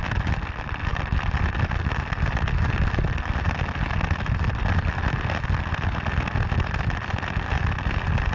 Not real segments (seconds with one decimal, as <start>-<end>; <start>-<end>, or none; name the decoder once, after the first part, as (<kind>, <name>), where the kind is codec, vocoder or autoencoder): none